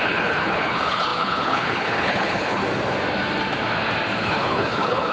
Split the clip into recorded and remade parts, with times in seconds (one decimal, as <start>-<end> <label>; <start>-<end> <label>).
0.0-2.6 remade; 2.6-4.2 recorded; 4.2-5.1 remade